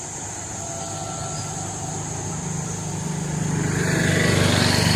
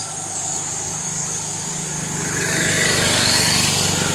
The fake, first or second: second